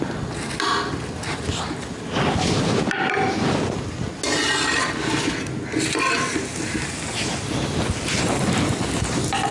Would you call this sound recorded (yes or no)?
yes